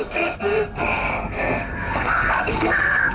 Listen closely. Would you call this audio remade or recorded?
remade